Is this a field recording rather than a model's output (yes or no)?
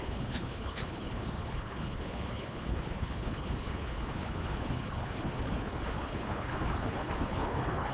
no